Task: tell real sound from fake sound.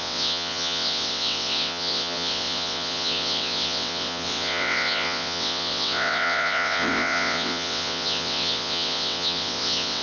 fake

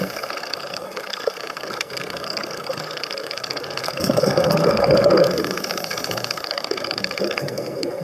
fake